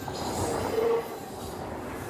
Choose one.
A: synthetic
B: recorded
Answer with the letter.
B